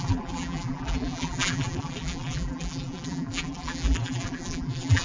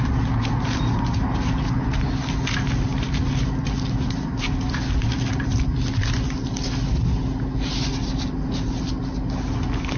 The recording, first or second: second